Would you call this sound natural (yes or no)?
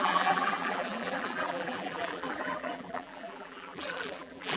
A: no